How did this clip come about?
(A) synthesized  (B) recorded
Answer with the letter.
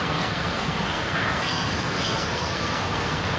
A